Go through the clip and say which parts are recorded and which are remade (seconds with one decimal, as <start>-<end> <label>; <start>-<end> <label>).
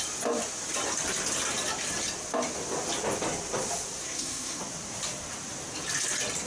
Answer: 0.0-4.0 recorded; 4.0-4.6 remade; 4.6-6.5 recorded